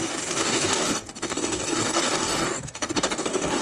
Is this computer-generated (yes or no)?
yes